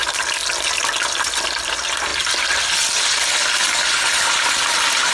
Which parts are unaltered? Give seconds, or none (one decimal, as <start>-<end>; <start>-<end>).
0.4-1.6; 2.1-4.2